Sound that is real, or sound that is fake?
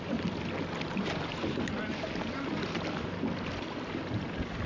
real